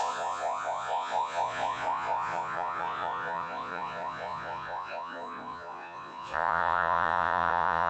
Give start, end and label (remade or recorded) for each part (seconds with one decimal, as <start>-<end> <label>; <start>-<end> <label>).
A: 0.0-7.9 remade